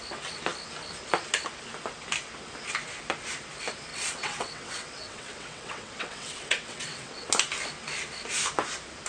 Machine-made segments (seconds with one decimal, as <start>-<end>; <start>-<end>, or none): 3.9-7.3